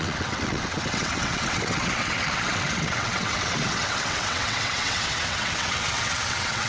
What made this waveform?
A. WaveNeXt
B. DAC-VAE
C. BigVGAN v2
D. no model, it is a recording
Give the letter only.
A